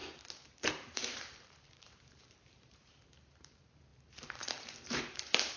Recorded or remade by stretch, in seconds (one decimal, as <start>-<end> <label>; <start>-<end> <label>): 0.0-5.6 remade